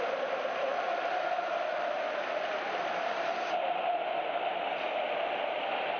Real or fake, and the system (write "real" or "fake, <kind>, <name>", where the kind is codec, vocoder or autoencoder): fake, vocoder, BigVGAN v2